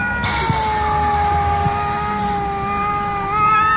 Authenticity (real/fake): real